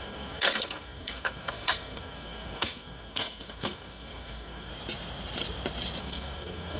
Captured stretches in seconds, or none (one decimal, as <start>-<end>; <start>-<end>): 4.7-6.0